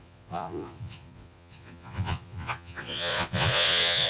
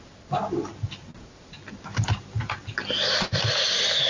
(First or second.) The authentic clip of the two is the second